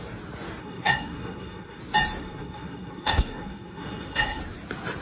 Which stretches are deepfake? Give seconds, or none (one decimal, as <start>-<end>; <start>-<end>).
0.6-1.8; 2.2-4.4